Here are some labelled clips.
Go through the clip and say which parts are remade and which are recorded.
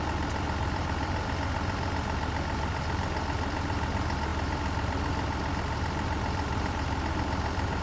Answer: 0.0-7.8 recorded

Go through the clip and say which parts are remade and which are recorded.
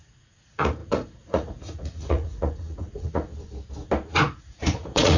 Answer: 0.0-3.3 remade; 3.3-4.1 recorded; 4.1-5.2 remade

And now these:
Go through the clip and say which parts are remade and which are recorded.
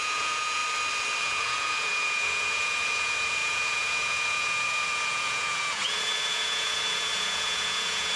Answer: 0.0-0.6 remade; 0.6-1.2 recorded; 1.2-8.2 remade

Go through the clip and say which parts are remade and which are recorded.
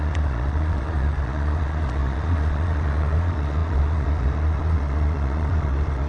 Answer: 0.0-6.1 remade